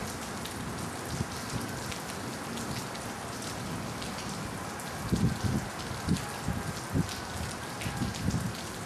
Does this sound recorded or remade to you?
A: recorded